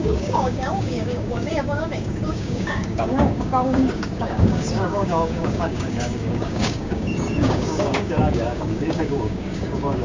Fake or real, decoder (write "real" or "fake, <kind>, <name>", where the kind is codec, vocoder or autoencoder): fake, codec, DAC